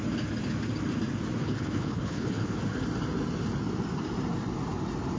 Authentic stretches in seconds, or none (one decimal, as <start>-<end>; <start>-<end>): 0.0-1.4; 2.6-5.2